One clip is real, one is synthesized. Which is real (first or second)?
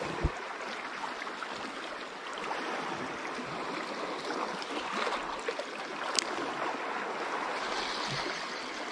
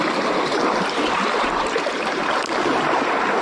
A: first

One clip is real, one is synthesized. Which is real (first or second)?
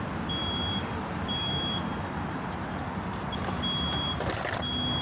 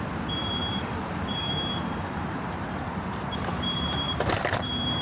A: first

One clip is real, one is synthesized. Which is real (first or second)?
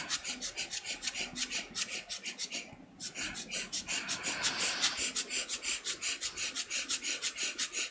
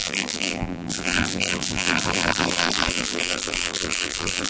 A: first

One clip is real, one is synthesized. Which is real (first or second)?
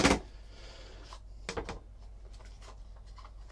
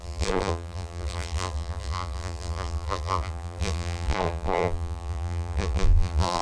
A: first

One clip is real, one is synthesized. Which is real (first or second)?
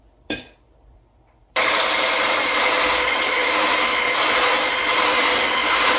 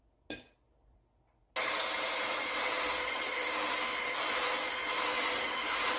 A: second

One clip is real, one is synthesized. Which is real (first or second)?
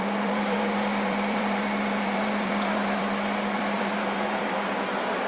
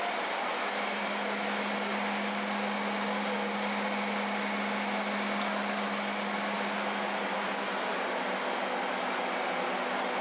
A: second